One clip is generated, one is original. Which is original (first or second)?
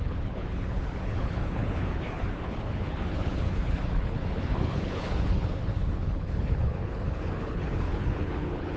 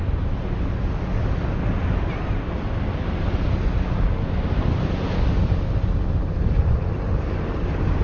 second